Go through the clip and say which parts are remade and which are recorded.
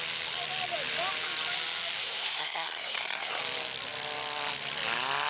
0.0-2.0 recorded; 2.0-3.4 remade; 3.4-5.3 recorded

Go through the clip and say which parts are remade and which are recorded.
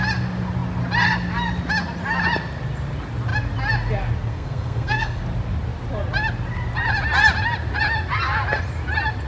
0.0-4.3 recorded; 4.3-5.2 remade; 5.2-9.3 recorded